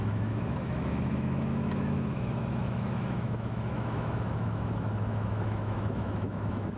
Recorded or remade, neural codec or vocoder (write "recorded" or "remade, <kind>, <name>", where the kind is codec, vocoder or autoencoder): remade, autoencoder, DAC-VAE